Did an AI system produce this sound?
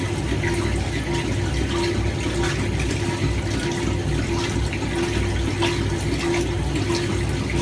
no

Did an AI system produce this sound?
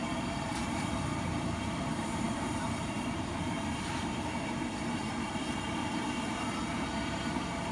yes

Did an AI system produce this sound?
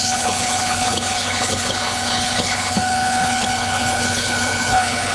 yes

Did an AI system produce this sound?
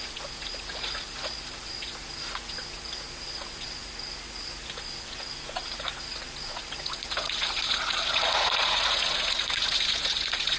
yes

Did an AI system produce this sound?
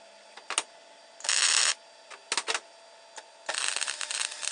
no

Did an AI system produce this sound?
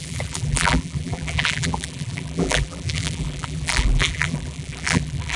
yes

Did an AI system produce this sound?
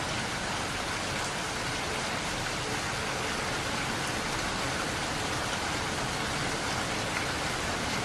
no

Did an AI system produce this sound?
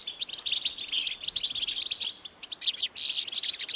no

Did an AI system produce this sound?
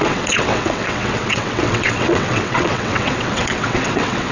yes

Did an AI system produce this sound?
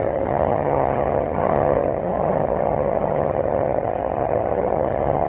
yes